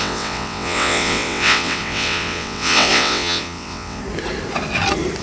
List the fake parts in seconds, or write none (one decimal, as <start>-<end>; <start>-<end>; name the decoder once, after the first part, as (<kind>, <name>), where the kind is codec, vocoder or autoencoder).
0.0-4.0 (vocoder, WaveNeXt)